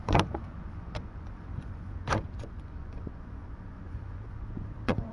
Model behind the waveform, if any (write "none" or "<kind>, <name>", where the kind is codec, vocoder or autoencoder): vocoder, Vocos